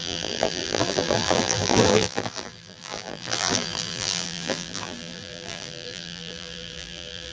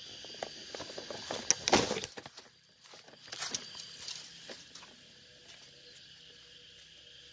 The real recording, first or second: second